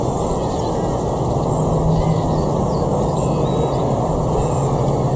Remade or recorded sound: recorded